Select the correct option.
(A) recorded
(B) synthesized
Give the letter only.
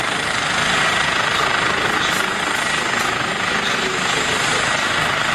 A